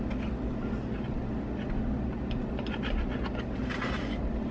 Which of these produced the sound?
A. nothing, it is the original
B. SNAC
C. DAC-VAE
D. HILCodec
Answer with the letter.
A